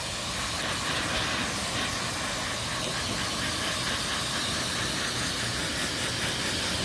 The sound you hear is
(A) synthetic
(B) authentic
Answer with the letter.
B